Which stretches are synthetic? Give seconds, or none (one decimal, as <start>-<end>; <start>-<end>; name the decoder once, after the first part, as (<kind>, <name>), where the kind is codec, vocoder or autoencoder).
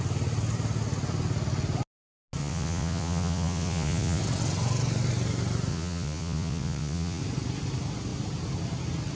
2.4-4.2 (vocoder, Vocos); 5.7-7.2